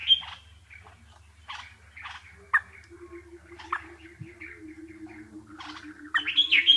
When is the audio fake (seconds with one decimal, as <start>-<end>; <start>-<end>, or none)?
none